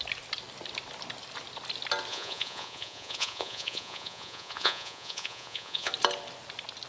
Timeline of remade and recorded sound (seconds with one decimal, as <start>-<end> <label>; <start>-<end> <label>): 0.0-2.1 recorded; 2.1-5.9 remade; 5.9-6.9 recorded